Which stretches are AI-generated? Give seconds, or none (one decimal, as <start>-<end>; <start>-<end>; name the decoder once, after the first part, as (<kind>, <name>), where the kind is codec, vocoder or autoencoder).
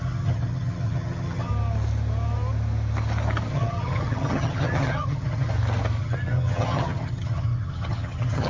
0.0-1.5 (vocoder, HiFi-GAN); 3.5-5.5; 6.0-8.5